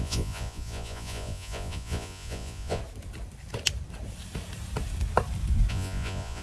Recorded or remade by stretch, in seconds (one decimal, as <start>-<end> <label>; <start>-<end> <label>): 0.0-2.8 remade; 2.8-5.7 recorded; 5.7-6.4 remade